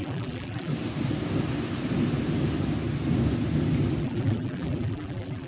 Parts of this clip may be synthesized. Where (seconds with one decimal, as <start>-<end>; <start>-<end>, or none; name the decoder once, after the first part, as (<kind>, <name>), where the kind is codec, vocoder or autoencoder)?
0.0-0.7 (vocoder, BigVGAN v2); 4.0-5.5